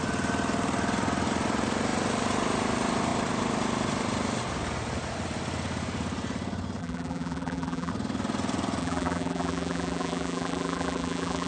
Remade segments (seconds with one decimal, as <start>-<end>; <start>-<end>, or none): 6.8-7.9; 8.8-11.5